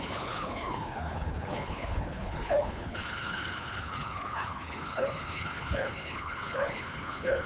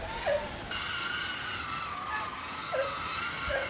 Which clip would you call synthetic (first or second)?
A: first